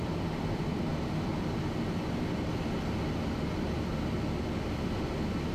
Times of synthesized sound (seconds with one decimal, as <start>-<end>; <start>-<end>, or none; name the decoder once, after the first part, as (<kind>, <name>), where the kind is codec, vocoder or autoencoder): none